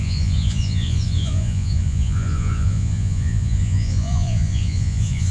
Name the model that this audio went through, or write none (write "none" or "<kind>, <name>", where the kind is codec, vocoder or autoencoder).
vocoder, Vocos